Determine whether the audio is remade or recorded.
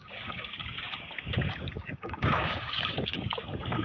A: remade